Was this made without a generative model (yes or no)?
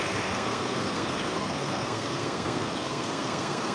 no